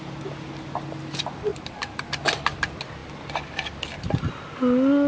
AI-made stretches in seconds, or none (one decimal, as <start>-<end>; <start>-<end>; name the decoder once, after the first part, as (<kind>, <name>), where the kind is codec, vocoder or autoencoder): 1.5-2.2 (vocoder, BigVGAN v2)